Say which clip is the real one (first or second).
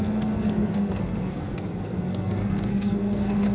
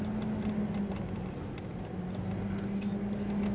second